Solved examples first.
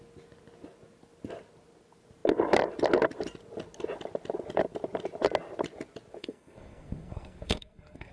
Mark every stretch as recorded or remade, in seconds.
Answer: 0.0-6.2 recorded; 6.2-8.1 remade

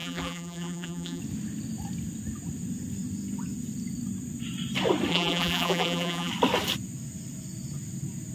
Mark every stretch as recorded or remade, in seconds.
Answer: 0.0-1.2 remade; 1.2-5.1 recorded; 5.1-6.3 remade; 6.3-8.3 recorded